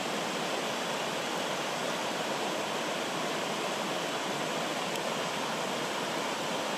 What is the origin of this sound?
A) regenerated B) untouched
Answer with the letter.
B